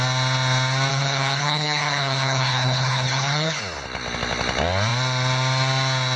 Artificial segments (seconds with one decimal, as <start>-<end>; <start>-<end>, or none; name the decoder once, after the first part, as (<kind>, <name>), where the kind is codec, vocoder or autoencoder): 0.9-3.6 (codec, HILCodec)